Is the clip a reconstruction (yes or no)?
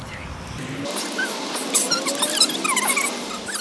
no